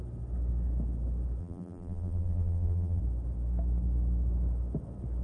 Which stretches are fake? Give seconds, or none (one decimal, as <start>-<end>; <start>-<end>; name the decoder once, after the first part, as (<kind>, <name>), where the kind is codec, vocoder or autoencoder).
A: 1.4-3.0 (vocoder, BigVGAN v2)